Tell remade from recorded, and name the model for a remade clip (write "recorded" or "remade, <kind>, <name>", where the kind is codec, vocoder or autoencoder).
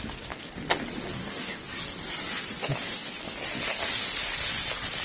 recorded